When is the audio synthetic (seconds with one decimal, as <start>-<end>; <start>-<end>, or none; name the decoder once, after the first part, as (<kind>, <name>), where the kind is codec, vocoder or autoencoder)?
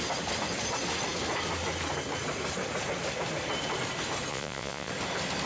4.3-4.9 (vocoder, Vocos)